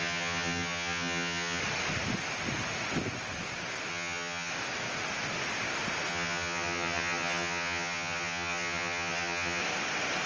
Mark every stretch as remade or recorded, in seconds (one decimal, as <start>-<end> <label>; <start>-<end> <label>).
0.0-1.6 remade; 1.6-3.9 recorded; 3.9-4.5 remade; 4.5-6.1 recorded; 6.1-9.6 remade; 9.6-10.3 recorded